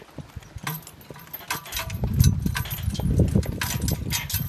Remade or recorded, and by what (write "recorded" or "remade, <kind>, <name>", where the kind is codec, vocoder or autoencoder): recorded